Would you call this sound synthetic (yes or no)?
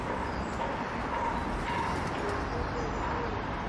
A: no